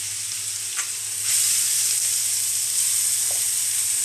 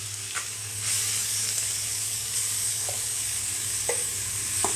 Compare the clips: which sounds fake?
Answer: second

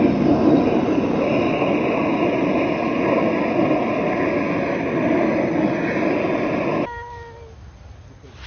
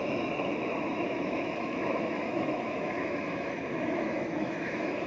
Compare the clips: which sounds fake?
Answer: second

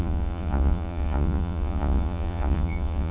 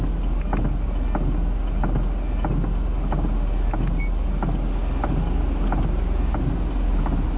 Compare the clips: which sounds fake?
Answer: first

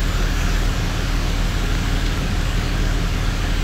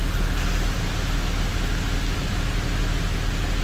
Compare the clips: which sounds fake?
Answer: first